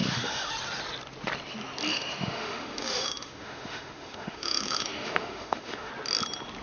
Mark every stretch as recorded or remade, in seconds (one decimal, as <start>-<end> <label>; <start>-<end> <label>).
0.0-0.5 remade; 0.5-1.9 recorded; 1.9-5.9 remade; 5.9-6.6 recorded